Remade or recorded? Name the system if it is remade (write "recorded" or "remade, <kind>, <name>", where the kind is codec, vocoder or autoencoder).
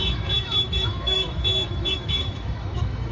remade, autoencoder, DAC-VAE